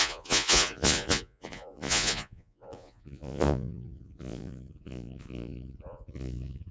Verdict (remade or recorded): remade